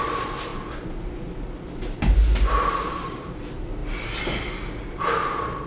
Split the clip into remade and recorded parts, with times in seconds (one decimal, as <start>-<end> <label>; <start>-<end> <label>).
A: 0.0-0.5 remade; 0.5-2.0 recorded; 2.0-3.8 remade; 3.8-4.8 recorded; 4.8-5.7 remade